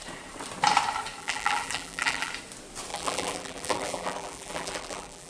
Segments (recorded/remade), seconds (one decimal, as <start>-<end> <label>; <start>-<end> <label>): 0.0-1.2 recorded; 1.2-2.3 remade; 2.3-2.9 recorded; 2.9-5.3 remade